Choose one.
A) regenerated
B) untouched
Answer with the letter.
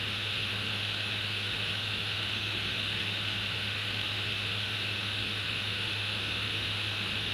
A